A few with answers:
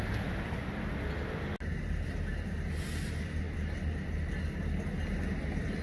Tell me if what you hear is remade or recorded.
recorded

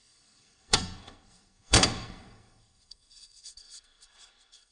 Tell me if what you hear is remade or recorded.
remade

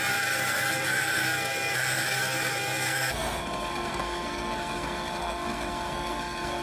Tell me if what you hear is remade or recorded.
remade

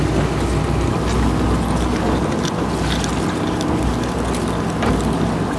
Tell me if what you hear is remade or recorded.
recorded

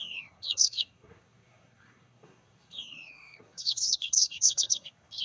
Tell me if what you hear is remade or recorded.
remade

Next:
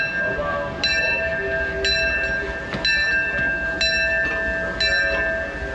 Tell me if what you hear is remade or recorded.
recorded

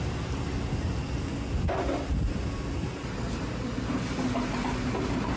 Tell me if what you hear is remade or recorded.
recorded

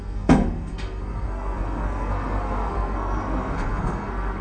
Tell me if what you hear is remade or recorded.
remade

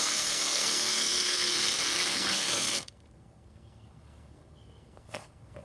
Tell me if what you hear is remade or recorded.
remade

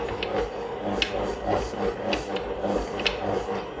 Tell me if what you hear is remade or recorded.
recorded